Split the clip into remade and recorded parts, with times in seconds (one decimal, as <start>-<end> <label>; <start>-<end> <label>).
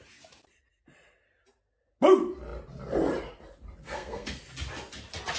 0.0-3.8 recorded; 3.8-4.4 remade; 4.4-5.4 recorded